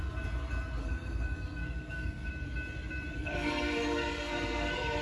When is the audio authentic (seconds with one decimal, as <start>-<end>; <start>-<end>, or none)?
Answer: 0.0-0.8; 2.3-3.1